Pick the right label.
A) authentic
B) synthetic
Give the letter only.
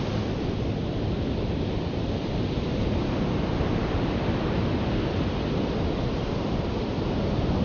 A